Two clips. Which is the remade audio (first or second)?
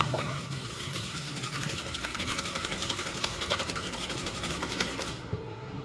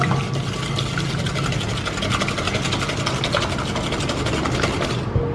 first